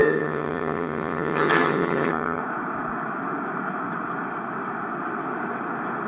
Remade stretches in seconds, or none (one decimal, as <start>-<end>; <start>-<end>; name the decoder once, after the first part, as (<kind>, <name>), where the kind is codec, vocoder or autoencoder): 0.0-2.4 (vocoder, HiFi-GAN)